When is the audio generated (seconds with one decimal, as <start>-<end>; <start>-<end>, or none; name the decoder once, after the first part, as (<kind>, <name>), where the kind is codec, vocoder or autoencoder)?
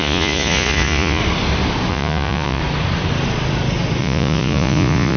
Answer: 0.0-1.2 (vocoder, Vocos); 1.9-2.6; 4.0-5.2